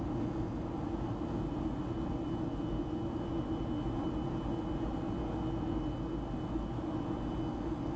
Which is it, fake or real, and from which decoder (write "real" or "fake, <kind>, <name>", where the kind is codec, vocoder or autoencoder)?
real